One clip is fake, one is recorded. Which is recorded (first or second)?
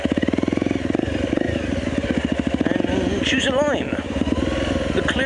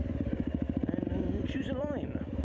first